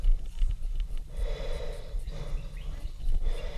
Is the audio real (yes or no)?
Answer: no